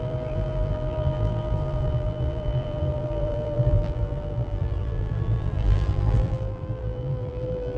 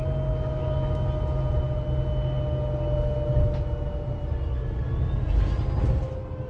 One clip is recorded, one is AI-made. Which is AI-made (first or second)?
first